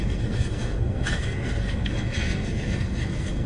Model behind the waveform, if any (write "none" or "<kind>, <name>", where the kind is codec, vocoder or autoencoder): codec, SNAC